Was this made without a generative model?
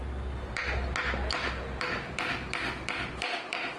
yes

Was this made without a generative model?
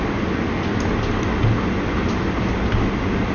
yes